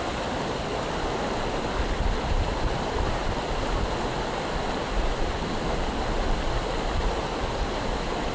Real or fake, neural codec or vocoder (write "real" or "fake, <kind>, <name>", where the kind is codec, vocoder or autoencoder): real